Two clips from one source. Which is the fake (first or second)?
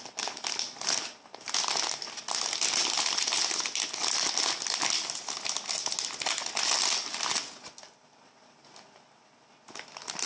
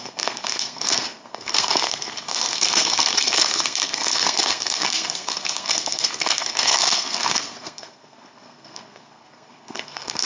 second